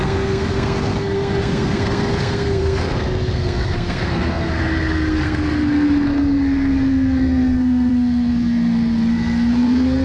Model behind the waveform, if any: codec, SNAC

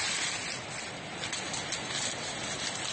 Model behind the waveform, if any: none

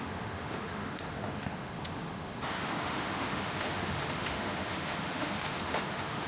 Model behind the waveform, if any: autoencoder, DAC-VAE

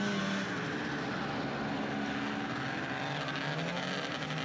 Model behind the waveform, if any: none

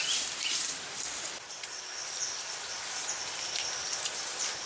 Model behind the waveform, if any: vocoder, BigVGAN v2